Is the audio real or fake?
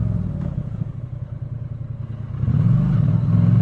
real